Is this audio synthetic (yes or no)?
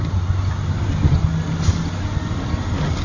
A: no